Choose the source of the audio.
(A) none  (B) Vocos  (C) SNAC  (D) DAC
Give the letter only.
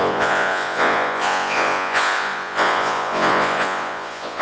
B